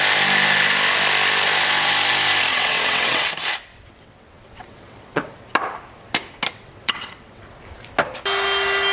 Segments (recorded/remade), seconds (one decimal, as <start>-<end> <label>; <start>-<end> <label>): 0.0-2.5 recorded; 2.5-3.3 remade; 3.3-3.7 recorded; 3.7-5.3 remade; 5.3-6.5 recorded; 6.5-7.5 remade; 7.5-8.9 recorded